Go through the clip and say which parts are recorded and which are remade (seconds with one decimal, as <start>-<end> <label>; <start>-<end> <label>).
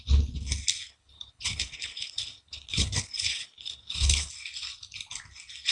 0.0-0.9 recorded; 0.9-4.3 remade; 4.3-5.7 recorded